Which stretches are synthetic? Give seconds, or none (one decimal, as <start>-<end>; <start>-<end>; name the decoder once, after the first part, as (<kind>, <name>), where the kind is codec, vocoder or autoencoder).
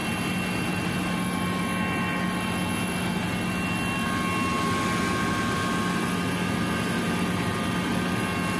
none